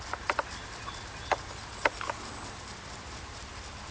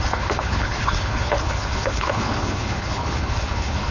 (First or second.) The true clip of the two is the first